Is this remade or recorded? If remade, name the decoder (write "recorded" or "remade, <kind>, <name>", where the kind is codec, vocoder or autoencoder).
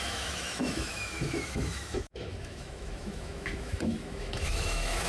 remade, autoencoder, DAC-VAE